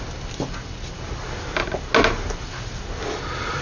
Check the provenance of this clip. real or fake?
real